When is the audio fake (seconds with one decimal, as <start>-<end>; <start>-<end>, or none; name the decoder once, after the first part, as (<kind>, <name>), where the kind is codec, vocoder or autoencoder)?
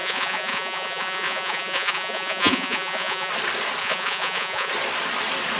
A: 0.0-3.3 (vocoder, Vocos); 3.8-4.7